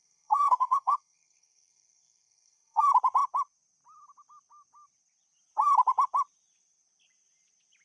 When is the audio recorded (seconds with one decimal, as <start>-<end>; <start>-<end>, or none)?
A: 2.8-7.8